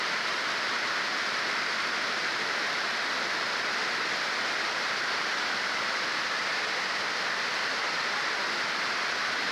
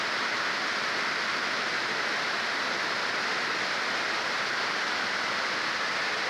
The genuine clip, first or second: second